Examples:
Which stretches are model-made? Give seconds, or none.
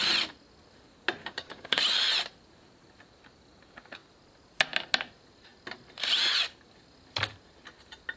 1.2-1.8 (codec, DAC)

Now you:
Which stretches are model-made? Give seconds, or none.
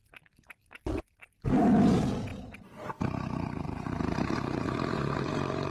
0.0-0.9 (vocoder, BigVGAN v2); 2.3-5.7